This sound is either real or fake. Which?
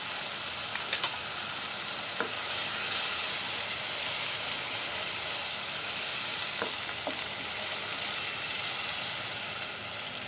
real